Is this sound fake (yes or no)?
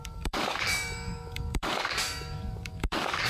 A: yes